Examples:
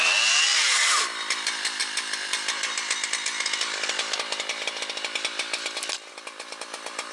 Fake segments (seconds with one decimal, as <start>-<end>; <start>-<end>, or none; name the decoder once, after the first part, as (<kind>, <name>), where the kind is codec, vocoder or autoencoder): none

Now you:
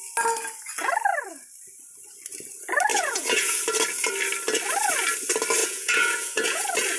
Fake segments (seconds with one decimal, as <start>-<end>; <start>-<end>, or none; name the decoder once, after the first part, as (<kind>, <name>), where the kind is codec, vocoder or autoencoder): 2.9-3.6 (vocoder, Vocos); 5.6-6.6

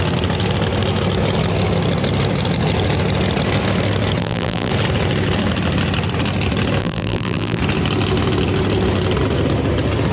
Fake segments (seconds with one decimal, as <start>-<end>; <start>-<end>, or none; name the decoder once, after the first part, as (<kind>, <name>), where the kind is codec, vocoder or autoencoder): 4.2-4.7 (vocoder, BigVGAN v2); 6.8-7.6